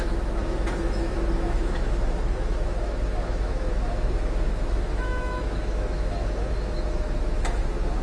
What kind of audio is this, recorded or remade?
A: remade